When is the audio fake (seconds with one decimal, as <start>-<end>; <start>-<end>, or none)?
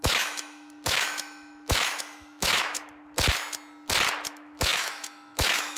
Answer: 0.0-2.8; 4.3-5.8